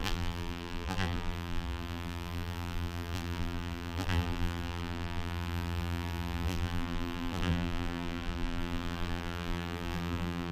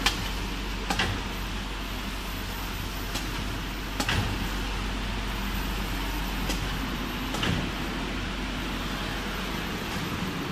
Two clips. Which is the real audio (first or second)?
second